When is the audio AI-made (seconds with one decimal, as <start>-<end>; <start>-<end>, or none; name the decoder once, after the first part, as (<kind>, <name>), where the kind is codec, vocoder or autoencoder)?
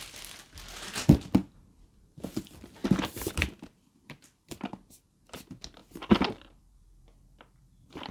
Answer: 1.4-2.4 (vocoder, BigVGAN v2); 2.8-4.7; 5.8-8.1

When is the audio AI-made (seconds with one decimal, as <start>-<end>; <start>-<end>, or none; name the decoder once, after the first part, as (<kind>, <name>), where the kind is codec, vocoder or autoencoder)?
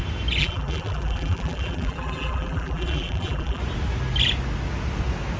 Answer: 0.4-3.6 (vocoder, BigVGAN v2)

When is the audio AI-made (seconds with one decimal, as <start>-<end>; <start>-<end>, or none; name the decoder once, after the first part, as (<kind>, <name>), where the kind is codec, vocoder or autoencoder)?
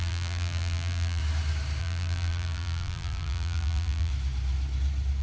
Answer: 0.0-1.2 (vocoder, BigVGAN v2); 1.8-4.1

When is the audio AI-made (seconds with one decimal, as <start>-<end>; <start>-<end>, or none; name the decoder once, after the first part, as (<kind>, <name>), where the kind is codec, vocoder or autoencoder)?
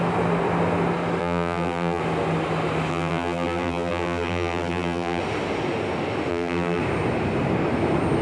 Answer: 1.2-2.0 (vocoder, BigVGAN v2); 2.9-5.2; 6.3-6.8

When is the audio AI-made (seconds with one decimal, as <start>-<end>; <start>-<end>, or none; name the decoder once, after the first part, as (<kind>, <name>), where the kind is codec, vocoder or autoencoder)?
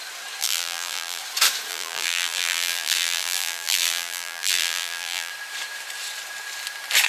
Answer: 0.4-1.2 (vocoder, BigVGAN v2); 1.7-5.3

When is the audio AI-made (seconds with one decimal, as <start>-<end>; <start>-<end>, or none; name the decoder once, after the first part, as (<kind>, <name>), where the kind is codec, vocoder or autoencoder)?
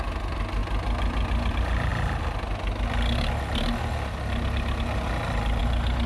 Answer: none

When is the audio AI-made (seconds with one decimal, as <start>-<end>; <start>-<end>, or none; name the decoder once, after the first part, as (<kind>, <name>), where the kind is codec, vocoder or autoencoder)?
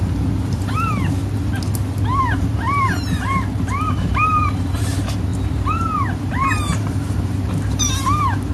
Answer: 0.0-1.2 (vocoder, BigVGAN v2); 2.2-8.5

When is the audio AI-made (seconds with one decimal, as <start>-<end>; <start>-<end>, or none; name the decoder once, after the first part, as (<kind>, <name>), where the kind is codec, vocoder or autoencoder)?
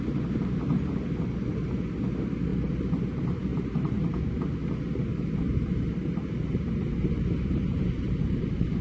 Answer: 3.5-4.2 (vocoder, BigVGAN v2); 5.1-8.8